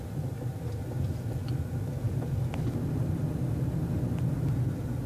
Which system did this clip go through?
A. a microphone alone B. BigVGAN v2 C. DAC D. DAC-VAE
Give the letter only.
A